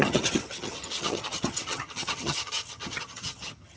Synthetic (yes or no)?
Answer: yes